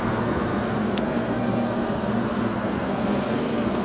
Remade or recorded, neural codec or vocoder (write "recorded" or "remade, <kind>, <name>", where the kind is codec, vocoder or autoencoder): remade, codec, SNAC